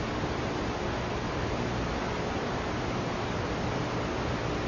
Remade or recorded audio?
recorded